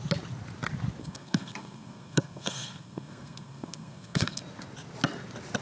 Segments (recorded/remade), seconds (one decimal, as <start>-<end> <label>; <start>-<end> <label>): 0.0-1.0 recorded; 1.0-4.4 remade; 4.4-5.6 recorded